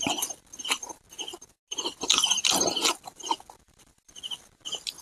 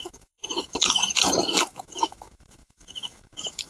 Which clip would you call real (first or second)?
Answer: first